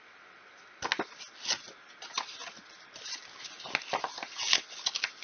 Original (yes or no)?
yes